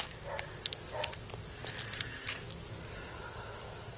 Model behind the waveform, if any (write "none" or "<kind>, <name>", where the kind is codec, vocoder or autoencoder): none